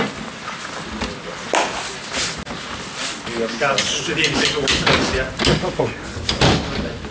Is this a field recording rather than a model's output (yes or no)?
yes